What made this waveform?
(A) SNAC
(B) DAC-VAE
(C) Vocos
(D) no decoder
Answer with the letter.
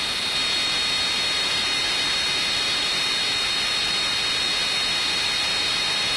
D